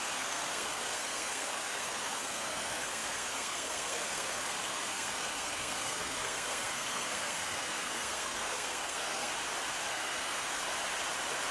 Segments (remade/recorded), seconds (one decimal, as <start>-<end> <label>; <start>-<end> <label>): 0.0-9.3 remade; 9.3-9.9 recorded; 9.9-10.6 remade; 10.6-11.5 recorded